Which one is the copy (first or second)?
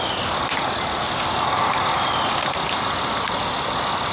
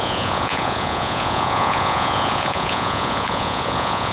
second